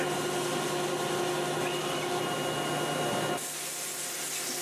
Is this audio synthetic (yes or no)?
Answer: no